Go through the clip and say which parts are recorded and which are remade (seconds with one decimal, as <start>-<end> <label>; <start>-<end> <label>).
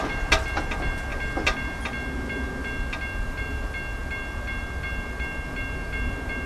0.0-6.5 recorded